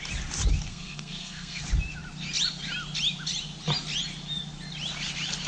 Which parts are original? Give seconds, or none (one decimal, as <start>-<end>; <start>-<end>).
0.0-0.7; 1.6-5.5